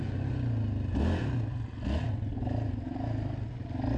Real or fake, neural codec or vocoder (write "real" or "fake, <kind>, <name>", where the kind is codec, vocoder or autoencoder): real